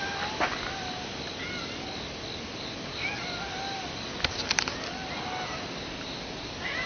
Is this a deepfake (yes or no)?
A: no